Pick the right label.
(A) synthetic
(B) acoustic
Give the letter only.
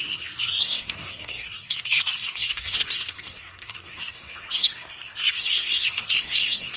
A